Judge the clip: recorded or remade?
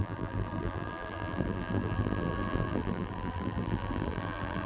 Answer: remade